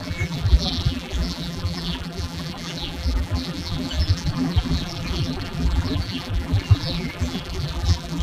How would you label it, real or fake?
fake